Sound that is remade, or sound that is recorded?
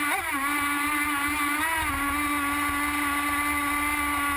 recorded